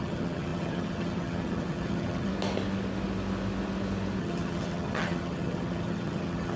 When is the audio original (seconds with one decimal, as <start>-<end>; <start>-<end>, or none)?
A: 2.3-4.2